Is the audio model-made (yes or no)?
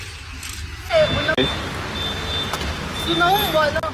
no